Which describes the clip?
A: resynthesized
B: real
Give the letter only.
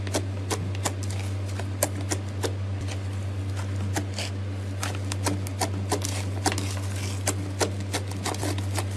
B